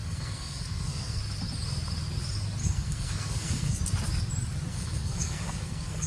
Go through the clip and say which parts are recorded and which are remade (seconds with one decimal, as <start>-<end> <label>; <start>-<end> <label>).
0.0-1.2 remade; 1.2-2.6 recorded; 2.6-3.8 remade; 3.8-4.7 recorded; 4.7-6.1 remade